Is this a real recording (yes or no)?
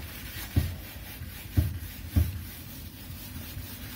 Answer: no